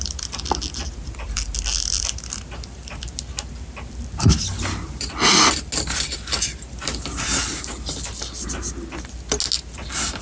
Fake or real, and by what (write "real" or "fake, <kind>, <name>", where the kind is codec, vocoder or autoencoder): real